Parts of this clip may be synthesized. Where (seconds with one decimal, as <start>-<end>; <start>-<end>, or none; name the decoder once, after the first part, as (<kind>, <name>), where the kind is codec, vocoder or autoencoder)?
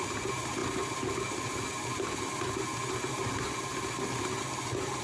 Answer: none